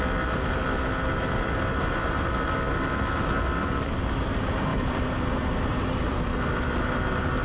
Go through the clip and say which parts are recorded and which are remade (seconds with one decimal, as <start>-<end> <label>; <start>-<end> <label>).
0.0-4.7 recorded; 4.7-6.1 remade; 6.1-7.4 recorded